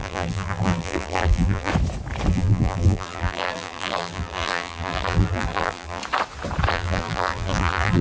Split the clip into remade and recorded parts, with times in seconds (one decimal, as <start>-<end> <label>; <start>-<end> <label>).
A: 0.0-1.7 remade; 1.7-2.3 recorded; 2.3-6.0 remade; 6.0-6.7 recorded; 6.7-8.0 remade